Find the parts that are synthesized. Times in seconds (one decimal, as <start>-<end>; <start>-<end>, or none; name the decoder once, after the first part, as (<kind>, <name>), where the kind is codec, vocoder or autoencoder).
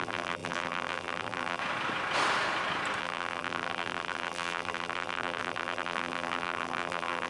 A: 0.0-1.6 (vocoder, BigVGAN v2); 3.0-7.3